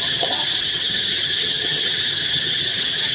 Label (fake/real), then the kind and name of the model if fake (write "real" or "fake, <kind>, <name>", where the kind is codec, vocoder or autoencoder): fake, vocoder, HiFi-GAN